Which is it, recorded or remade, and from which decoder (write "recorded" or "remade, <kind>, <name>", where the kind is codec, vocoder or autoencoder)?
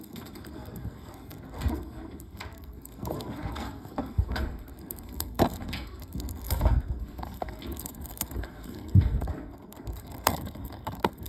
remade, codec, SNAC